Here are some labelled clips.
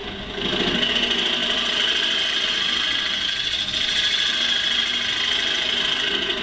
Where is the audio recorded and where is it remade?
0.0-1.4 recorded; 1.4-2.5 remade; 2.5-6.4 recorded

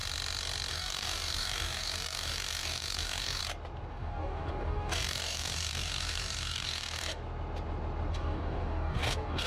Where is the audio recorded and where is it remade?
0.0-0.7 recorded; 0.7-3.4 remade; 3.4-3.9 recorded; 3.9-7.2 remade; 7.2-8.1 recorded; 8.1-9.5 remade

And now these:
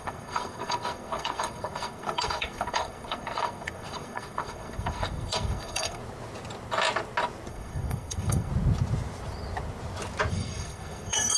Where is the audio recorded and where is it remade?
0.0-6.0 remade; 6.0-7.5 recorded; 7.5-8.5 remade; 8.5-10.3 recorded; 10.3-11.4 remade

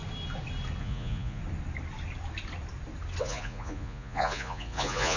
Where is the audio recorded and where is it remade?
0.0-0.8 recorded; 0.8-1.4 remade; 1.4-3.2 recorded; 3.2-5.2 remade